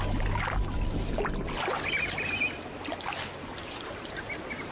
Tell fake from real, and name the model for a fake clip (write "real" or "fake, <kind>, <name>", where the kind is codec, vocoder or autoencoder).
real